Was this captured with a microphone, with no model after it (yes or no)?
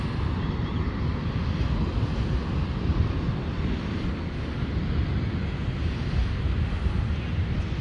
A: yes